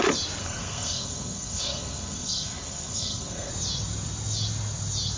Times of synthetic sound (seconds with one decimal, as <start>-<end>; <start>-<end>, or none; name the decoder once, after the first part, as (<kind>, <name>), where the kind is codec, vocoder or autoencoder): 0.4-3.5 (codec, SNAC)